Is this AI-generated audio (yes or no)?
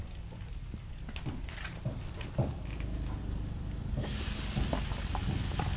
no